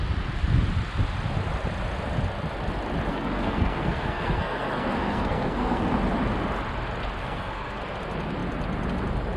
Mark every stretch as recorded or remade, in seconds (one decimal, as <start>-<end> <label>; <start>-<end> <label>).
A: 0.0-3.1 recorded; 3.1-5.9 remade; 5.9-7.2 recorded; 7.2-7.8 remade; 7.8-9.4 recorded